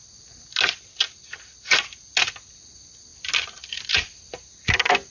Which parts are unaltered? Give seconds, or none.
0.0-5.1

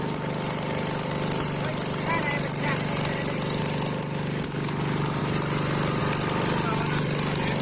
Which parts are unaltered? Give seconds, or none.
0.0-7.6

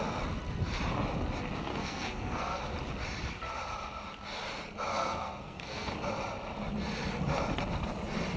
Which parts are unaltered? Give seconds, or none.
0.0-1.7; 2.6-4.9; 5.9-8.4

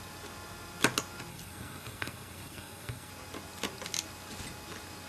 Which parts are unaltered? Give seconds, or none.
0.0-1.3; 3.1-5.1

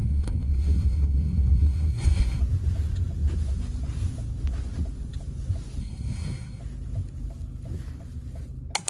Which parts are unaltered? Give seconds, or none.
2.4-5.8; 6.6-8.9